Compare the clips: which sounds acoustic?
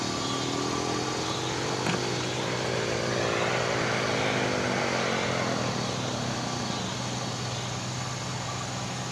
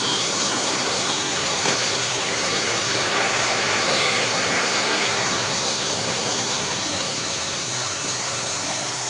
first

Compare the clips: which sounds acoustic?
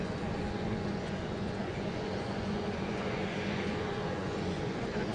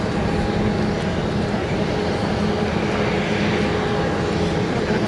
second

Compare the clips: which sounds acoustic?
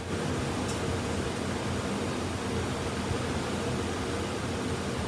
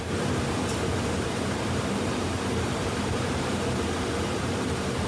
first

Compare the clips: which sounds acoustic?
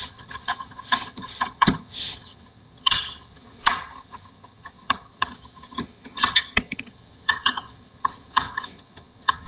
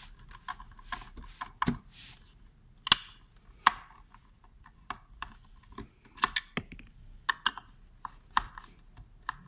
second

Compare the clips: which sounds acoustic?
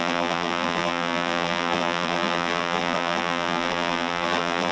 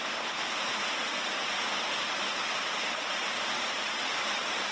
second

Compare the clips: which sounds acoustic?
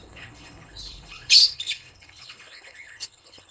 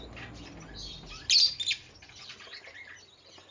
second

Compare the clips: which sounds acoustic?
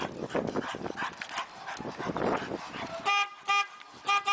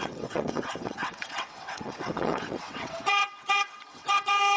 first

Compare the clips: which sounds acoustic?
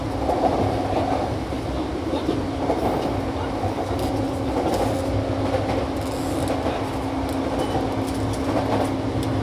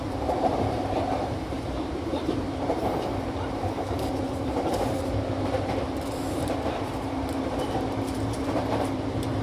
first